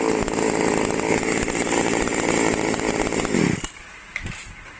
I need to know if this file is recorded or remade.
recorded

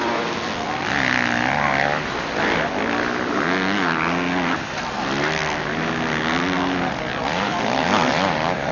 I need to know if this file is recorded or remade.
recorded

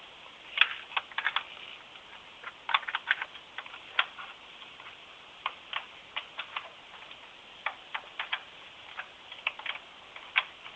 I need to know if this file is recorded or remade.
recorded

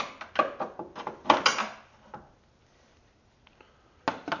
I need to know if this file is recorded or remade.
recorded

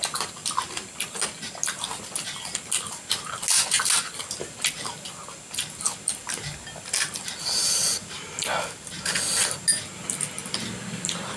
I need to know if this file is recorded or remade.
recorded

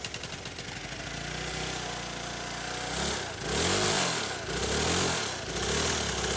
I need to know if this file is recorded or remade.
recorded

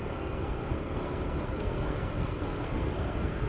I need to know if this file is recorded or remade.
remade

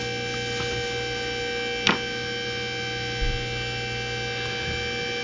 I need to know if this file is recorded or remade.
recorded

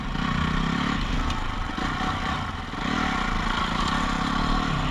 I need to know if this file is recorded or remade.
recorded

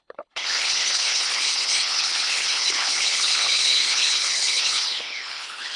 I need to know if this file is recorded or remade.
remade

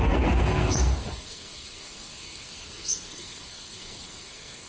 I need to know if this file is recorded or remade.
remade